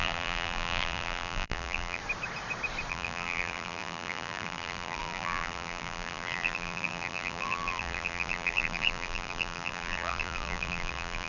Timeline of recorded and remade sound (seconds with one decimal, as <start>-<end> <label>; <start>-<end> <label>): 0.0-2.0 remade; 2.0-2.9 recorded; 2.9-11.3 remade